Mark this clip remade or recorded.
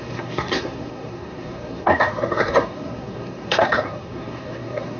remade